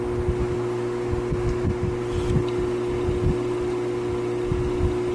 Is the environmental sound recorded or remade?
recorded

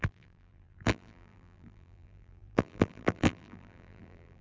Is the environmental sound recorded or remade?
remade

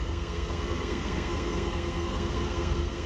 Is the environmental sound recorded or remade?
remade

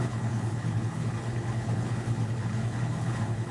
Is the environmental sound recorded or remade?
remade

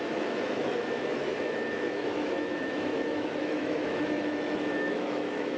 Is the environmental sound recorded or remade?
remade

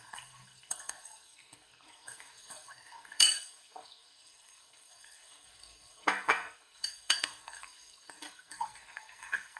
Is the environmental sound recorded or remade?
remade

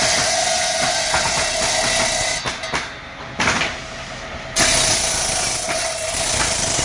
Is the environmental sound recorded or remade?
recorded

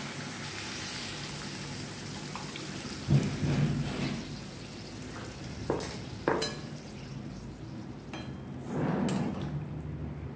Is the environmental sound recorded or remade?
recorded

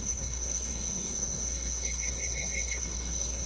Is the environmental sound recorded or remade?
remade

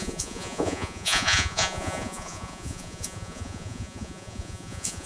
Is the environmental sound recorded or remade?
remade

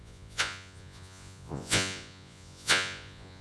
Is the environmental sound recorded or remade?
remade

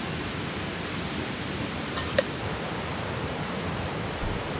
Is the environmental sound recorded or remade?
recorded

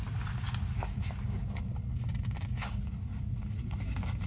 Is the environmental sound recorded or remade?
recorded